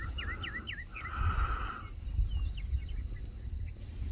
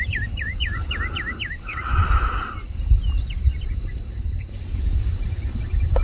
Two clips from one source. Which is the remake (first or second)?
second